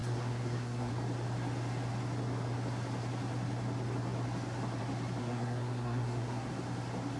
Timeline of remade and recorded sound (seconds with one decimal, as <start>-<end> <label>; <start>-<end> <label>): 0.0-0.9 remade; 0.9-5.2 recorded; 5.2-6.5 remade; 6.5-7.2 recorded